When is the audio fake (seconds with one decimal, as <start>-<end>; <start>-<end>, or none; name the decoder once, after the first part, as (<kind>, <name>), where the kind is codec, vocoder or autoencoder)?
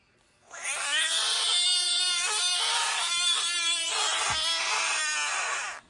none